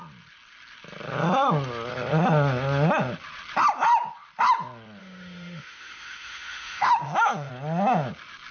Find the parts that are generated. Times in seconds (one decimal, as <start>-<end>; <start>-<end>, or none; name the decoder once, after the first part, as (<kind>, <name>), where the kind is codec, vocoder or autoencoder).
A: 5.0-7.5 (autoencoder, DAC-VAE)